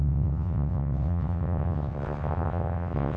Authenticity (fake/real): fake